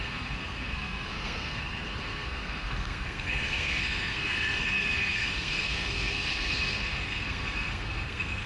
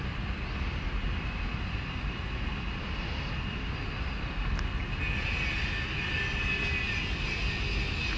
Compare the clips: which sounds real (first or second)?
second